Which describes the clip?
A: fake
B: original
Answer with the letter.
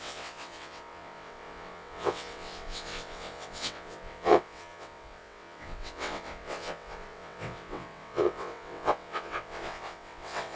A